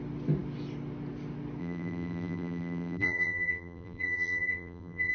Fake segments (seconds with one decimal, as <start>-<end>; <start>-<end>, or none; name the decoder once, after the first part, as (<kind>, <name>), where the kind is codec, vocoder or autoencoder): 1.6-5.1 (vocoder, BigVGAN v2)